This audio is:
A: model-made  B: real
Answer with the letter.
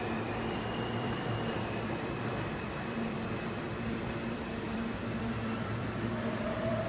A